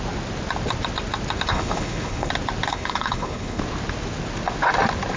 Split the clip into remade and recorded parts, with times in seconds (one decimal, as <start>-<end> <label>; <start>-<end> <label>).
0.0-1.5 recorded; 1.5-2.3 remade; 2.3-2.7 recorded; 2.7-3.6 remade; 3.6-5.2 recorded